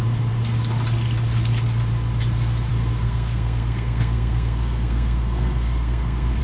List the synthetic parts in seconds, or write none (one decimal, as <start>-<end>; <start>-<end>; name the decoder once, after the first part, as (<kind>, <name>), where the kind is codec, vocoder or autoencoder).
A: 2.7-6.4 (codec, SNAC)